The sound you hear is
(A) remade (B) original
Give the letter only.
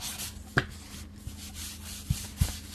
B